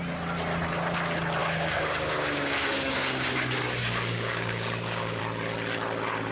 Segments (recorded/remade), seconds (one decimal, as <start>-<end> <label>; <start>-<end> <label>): 0.0-1.4 recorded; 1.4-5.2 remade; 5.2-6.3 recorded